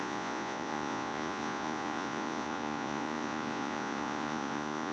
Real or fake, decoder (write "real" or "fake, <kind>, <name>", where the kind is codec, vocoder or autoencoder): fake, vocoder, Vocos